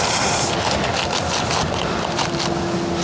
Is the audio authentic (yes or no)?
yes